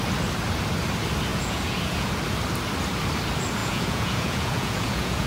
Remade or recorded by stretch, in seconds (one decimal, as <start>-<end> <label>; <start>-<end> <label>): 0.0-1.3 recorded; 1.3-2.1 remade; 2.1-3.6 recorded; 3.6-5.3 remade